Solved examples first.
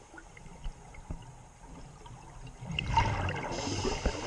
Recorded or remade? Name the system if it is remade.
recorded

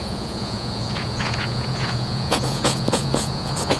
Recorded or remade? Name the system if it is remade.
remade, vocoder, Vocos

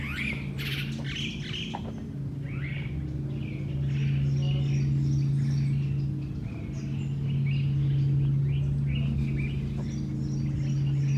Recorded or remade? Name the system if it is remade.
recorded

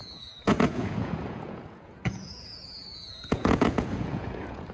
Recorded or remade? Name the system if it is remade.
remade, vocoder, Vocos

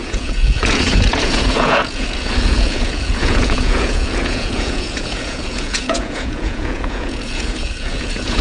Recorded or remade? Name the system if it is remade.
remade, vocoder, Vocos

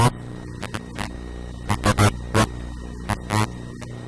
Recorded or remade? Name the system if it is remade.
recorded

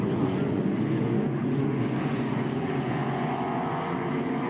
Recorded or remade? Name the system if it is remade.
remade, vocoder, Vocos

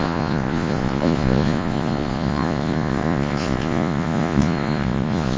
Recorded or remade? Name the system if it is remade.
remade, vocoder, Vocos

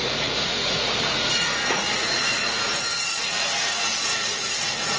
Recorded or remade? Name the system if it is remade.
remade, vocoder, Vocos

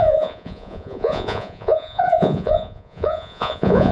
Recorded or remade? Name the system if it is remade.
remade, vocoder, Vocos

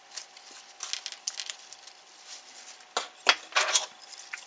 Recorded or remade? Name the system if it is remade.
recorded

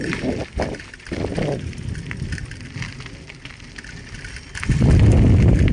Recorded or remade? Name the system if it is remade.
recorded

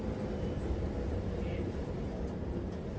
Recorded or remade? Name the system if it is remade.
recorded